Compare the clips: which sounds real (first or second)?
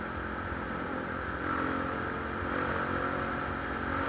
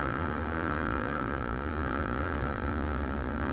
first